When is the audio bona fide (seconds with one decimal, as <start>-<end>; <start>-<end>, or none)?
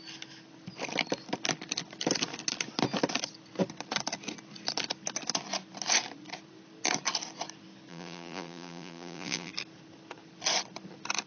0.0-7.9; 9.5-11.3